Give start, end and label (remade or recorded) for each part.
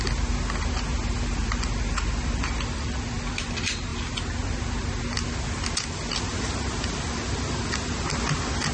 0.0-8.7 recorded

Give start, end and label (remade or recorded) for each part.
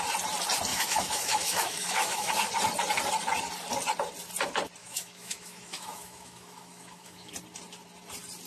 0.0-0.7 recorded; 0.7-2.3 remade; 2.3-4.8 recorded; 4.8-7.3 remade; 7.3-8.5 recorded